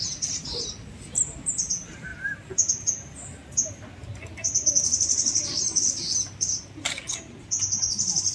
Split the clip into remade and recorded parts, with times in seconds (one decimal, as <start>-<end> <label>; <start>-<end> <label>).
0.0-8.3 recorded